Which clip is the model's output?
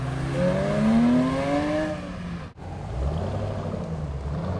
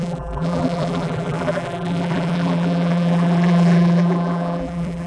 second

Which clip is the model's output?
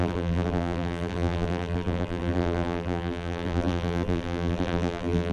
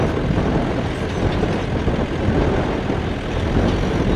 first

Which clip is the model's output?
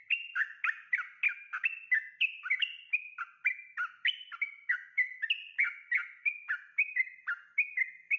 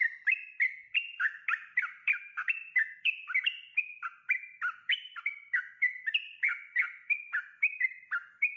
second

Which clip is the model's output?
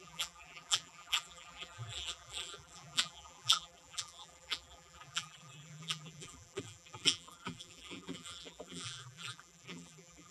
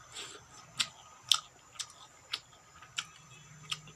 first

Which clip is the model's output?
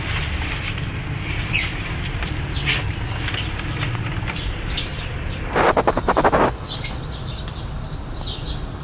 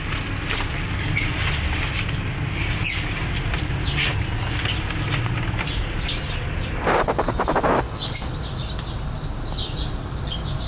first